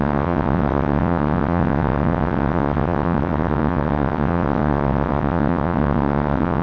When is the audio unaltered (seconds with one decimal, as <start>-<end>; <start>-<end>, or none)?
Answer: none